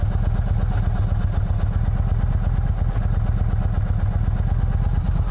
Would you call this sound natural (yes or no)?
yes